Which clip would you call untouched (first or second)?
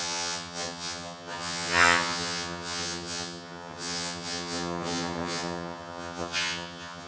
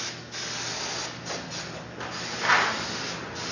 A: second